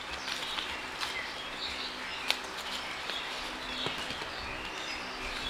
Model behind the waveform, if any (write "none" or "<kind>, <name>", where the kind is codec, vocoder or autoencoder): none